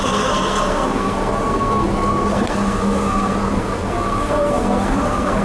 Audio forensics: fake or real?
fake